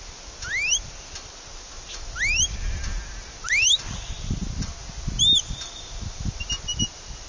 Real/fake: real